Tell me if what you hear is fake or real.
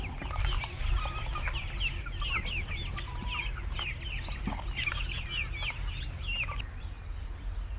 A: real